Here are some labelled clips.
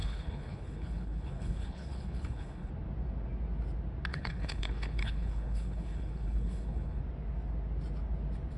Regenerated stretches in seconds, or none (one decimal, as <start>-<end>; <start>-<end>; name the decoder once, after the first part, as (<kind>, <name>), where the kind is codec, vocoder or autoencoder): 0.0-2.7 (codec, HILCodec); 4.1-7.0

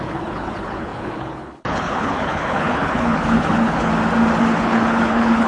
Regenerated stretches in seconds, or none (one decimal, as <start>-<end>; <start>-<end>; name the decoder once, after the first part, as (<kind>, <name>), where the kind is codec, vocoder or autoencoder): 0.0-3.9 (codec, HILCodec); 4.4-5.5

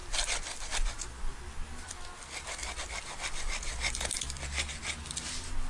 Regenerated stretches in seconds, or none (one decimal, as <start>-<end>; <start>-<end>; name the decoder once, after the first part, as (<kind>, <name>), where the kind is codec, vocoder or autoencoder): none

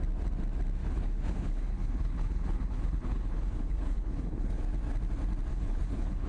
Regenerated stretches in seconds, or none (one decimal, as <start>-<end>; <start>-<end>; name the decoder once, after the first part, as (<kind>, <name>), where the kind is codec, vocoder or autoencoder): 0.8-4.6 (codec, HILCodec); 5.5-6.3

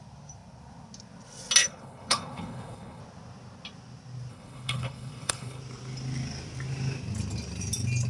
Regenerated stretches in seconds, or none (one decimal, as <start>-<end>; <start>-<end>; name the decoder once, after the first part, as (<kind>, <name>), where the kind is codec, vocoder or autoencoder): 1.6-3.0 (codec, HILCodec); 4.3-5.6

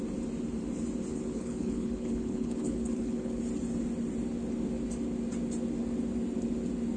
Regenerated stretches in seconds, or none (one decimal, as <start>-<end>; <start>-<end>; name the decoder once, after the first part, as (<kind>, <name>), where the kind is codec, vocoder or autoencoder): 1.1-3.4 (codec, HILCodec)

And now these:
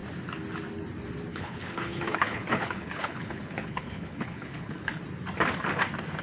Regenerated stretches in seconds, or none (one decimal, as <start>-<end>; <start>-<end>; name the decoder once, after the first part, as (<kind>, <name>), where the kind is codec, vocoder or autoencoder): 1.3-5.0 (codec, HILCodec)

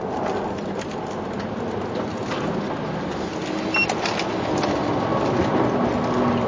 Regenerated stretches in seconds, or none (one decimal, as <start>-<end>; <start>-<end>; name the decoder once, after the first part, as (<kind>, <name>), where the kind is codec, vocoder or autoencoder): none